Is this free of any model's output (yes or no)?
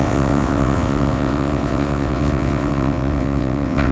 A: no